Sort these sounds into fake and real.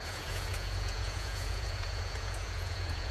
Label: fake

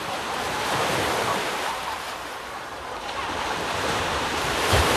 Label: fake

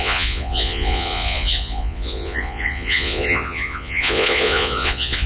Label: fake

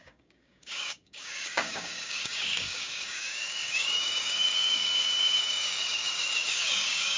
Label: fake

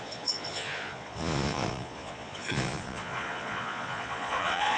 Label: fake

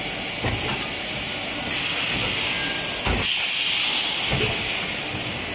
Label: real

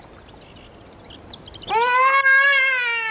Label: real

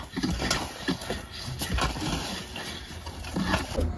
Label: real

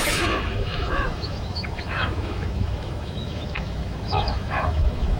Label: fake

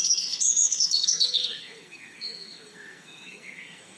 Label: fake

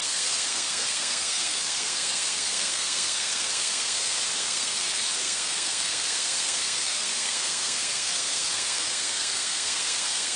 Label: fake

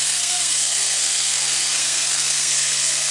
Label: fake